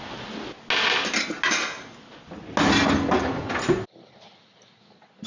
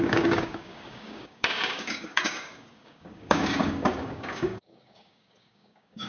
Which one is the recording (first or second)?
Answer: first